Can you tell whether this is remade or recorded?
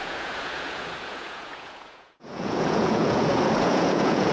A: remade